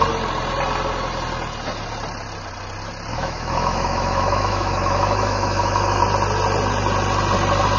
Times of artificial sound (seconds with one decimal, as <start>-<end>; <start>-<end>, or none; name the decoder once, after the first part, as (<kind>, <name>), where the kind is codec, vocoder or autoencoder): 3.1-6.0 (autoencoder, DAC-VAE)